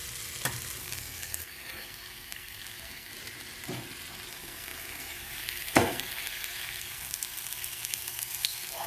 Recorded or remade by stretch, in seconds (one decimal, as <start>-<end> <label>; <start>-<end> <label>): 0.0-0.8 recorded; 0.8-3.1 remade; 3.1-4.3 recorded; 4.3-8.9 remade

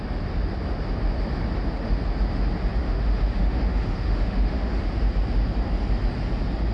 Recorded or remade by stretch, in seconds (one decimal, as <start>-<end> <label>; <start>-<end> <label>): 0.0-2.8 recorded; 2.8-4.8 remade; 4.8-6.7 recorded

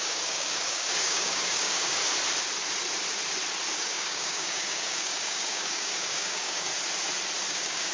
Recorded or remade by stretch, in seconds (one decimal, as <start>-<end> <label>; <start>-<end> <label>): 0.0-2.0 remade; 2.0-3.8 recorded; 3.8-6.7 remade; 6.7-7.5 recorded; 7.5-7.9 remade

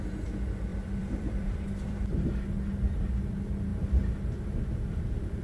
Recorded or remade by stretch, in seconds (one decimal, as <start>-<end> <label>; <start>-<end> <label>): 0.0-0.7 recorded; 0.7-2.2 remade; 2.2-5.4 recorded

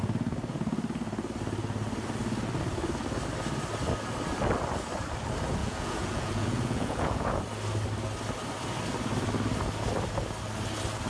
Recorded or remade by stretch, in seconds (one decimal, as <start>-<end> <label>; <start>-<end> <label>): 0.0-5.6 recorded; 5.6-7.4 remade; 7.4-11.1 recorded

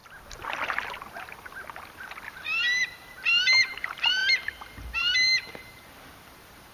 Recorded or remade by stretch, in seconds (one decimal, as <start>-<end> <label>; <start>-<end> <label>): 0.0-2.3 recorded; 2.3-6.7 remade

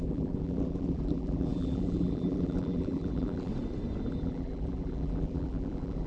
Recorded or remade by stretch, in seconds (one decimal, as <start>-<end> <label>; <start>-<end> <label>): 0.0-3.5 remade; 3.5-4.1 recorded; 4.1-6.1 remade

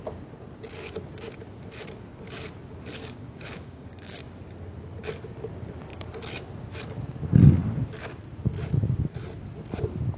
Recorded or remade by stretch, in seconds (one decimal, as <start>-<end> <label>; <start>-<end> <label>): 0.0-3.0 recorded; 3.0-4.3 remade; 4.3-10.2 recorded